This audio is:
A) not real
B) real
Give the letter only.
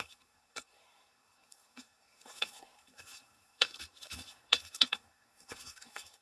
A